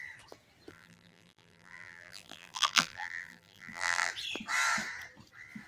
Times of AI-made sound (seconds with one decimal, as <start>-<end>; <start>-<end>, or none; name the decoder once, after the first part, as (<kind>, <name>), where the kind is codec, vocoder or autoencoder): 0.7-4.1 (vocoder, BigVGAN v2)